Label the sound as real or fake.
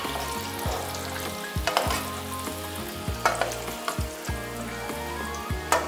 real